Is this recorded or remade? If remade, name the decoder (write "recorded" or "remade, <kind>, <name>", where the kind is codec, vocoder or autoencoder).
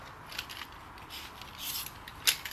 recorded